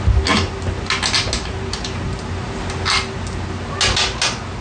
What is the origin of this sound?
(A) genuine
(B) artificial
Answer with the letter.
A